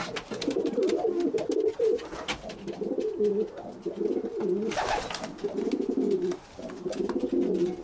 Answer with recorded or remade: recorded